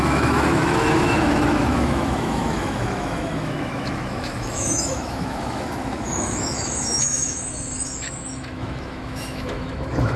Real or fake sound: fake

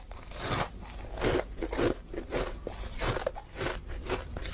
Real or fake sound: real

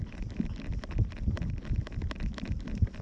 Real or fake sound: real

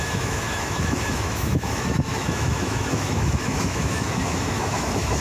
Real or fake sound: fake